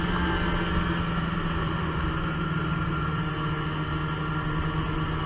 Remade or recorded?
recorded